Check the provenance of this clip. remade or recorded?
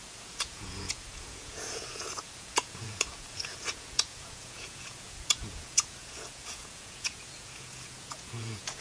remade